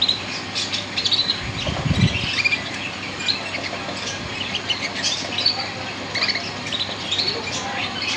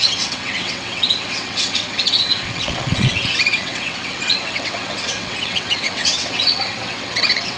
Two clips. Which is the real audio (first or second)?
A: first